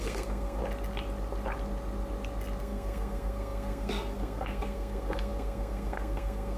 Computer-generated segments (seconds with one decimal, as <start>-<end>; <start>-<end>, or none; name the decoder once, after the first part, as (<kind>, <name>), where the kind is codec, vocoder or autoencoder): 0.0-0.6 (codec, SNAC); 2.6-6.6